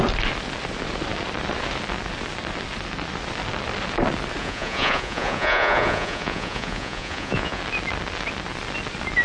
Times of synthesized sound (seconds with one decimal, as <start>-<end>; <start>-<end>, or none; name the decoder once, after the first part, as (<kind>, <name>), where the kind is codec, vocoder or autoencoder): 4.4-7.6 (vocoder, Vocos)